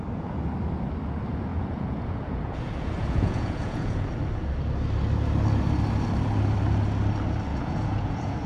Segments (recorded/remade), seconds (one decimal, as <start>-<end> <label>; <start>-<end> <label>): 0.0-1.5 recorded; 1.5-4.1 remade; 4.1-7.5 recorded; 7.5-8.5 remade